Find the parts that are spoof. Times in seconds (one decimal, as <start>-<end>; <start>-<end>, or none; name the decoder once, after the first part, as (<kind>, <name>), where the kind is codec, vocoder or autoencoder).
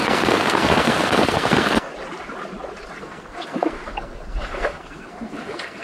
0.0-1.9 (codec, SNAC); 3.0-5.8